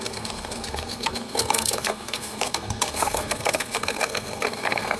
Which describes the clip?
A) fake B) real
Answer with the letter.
A